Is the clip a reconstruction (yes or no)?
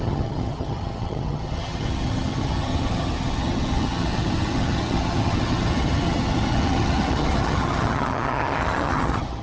yes